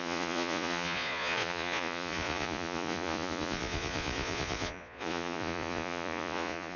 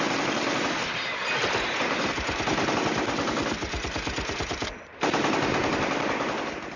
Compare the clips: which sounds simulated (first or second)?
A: first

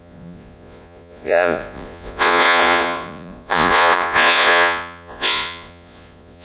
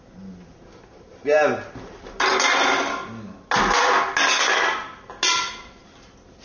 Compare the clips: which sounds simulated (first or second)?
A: first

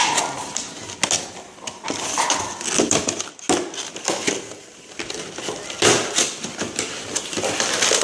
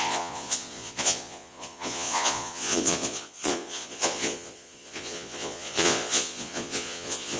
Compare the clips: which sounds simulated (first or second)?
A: second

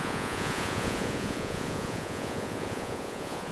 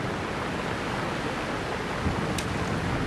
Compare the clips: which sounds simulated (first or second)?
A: first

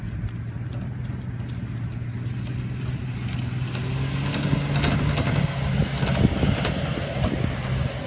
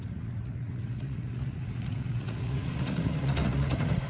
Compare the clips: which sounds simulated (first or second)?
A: second